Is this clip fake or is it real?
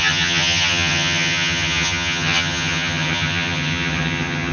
fake